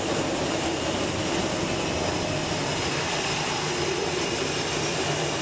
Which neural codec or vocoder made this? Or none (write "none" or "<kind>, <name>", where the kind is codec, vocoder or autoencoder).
none